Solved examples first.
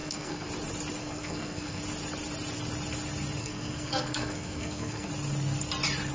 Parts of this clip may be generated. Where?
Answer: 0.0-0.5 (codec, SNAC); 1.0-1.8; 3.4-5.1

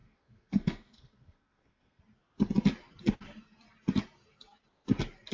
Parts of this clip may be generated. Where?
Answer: 0.0-2.0 (codec, SNAC)

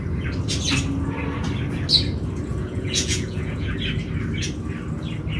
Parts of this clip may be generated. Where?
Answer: 2.5-3.7 (vocoder, Vocos)

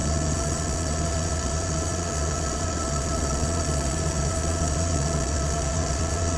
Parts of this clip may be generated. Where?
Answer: 0.0-6.4 (vocoder, Vocos)